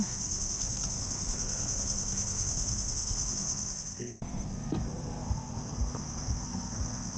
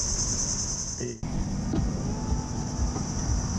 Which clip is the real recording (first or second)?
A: second